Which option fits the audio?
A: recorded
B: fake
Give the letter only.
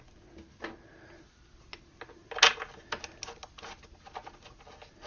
A